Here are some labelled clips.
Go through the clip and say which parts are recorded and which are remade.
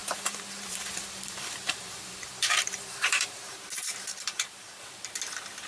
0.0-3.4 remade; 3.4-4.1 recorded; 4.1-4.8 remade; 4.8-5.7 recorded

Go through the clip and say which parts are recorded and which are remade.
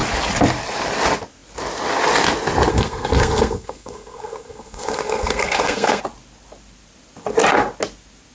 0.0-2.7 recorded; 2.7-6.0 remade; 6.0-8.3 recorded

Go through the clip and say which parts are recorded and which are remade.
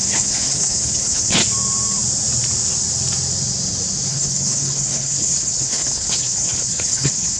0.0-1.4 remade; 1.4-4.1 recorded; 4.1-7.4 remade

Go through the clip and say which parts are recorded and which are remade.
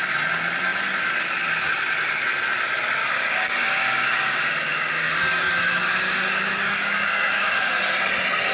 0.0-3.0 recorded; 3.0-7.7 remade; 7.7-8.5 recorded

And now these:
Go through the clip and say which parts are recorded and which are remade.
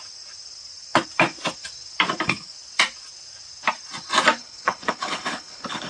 0.0-4.4 recorded; 4.4-5.9 remade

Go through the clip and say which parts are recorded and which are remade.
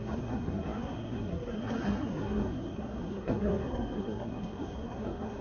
0.0-5.4 remade